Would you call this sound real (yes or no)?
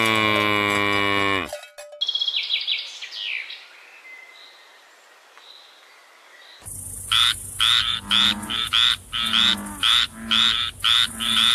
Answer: yes